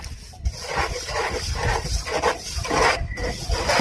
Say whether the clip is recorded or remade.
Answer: recorded